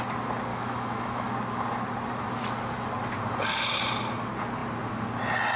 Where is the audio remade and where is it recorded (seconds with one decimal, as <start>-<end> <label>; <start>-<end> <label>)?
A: 0.0-0.5 recorded; 0.5-1.3 remade; 1.3-5.6 recorded